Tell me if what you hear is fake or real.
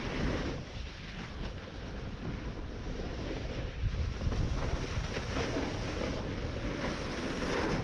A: real